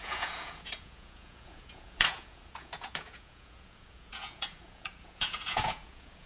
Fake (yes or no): yes